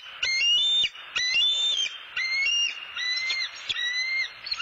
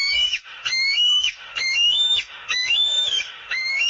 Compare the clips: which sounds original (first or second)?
first